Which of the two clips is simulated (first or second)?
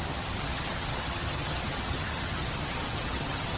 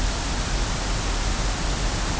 first